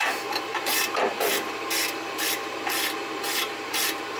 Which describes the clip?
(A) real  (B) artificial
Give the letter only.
B